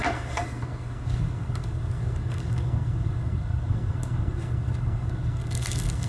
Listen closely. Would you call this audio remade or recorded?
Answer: remade